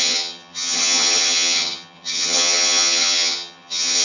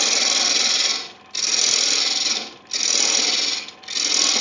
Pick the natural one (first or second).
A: second